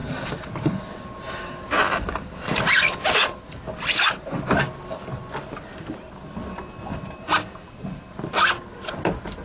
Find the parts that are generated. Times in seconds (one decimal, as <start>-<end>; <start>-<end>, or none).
none